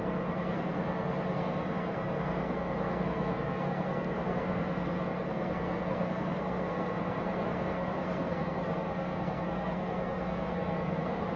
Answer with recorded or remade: remade